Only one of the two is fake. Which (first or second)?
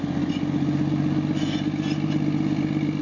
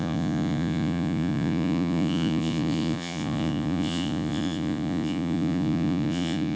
second